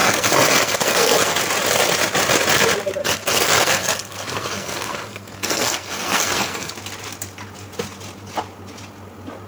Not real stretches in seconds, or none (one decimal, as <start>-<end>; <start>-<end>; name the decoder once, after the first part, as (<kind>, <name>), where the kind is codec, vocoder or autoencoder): 0.0-1.4 (codec, SNAC); 3.0-6.7